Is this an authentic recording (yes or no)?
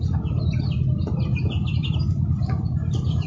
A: yes